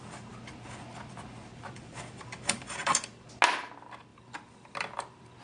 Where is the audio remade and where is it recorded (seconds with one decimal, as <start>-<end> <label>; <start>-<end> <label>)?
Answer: 0.0-1.5 recorded; 1.5-3.3 remade; 3.3-4.1 recorded; 4.1-5.4 remade